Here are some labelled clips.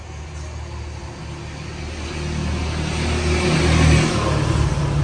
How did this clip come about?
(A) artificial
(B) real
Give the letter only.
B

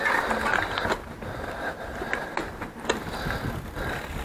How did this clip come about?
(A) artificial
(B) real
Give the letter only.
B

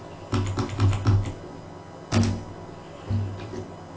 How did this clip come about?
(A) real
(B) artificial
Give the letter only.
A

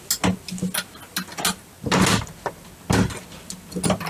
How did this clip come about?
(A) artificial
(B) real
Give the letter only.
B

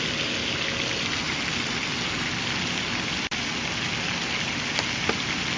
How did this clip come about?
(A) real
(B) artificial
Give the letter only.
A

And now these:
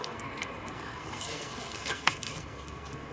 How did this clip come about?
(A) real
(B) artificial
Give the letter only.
B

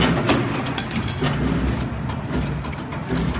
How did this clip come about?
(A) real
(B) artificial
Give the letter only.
A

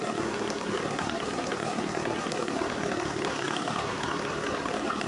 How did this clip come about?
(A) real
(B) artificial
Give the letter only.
B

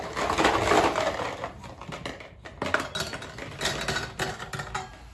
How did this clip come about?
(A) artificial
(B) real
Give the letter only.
B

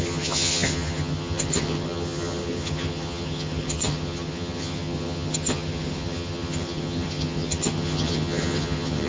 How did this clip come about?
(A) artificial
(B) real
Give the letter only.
A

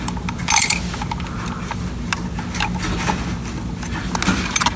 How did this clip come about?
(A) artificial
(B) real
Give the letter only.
B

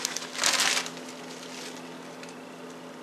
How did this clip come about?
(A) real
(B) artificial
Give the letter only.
A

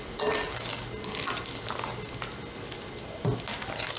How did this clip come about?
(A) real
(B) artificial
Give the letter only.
A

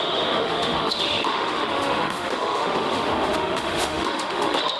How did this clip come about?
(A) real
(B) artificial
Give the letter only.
B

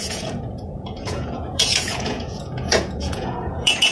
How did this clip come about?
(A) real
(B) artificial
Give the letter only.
B